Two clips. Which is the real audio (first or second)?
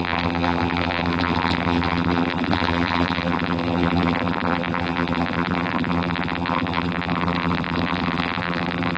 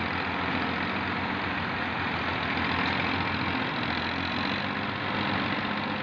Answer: second